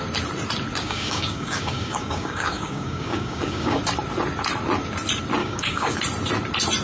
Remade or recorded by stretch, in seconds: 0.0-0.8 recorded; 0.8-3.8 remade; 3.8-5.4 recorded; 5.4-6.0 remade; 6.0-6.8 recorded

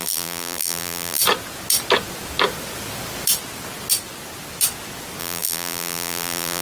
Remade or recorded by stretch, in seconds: 0.0-1.2 remade; 1.2-5.2 recorded; 5.2-6.6 remade

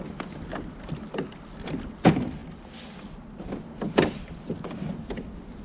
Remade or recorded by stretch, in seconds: 0.0-5.6 recorded

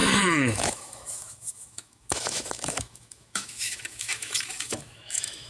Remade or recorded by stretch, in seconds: 0.0-5.5 remade

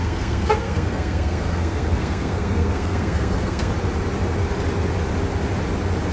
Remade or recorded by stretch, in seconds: 0.0-3.7 remade; 3.7-6.1 recorded

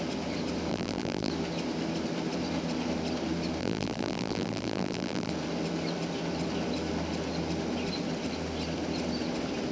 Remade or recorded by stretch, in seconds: 0.0-0.7 recorded; 0.7-1.3 remade; 1.3-3.6 recorded; 3.6-5.3 remade; 5.3-9.7 recorded